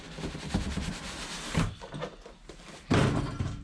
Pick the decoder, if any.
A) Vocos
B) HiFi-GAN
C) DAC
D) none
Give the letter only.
D